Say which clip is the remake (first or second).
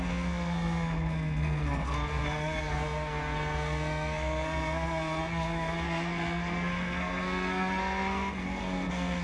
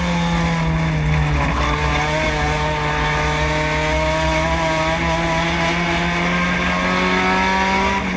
first